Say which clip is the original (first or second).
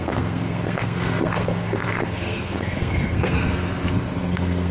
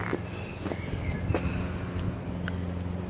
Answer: second